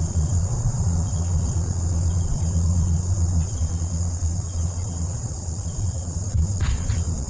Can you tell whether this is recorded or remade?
remade